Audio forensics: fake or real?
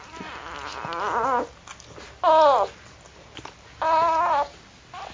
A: real